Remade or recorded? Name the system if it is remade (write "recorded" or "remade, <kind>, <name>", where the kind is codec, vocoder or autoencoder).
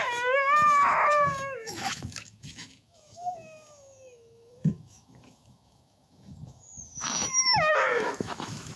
remade, autoencoder, DAC-VAE